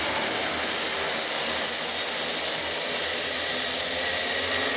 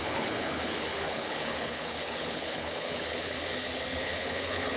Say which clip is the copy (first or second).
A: second